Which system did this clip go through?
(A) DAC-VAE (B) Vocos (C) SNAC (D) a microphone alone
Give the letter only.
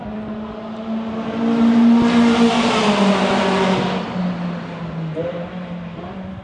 D